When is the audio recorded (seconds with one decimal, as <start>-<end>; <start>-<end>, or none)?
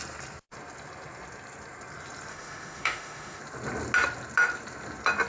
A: 0.0-2.3; 3.4-5.3